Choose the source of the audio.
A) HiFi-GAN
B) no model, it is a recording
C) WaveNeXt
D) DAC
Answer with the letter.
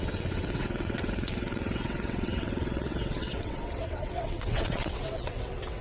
C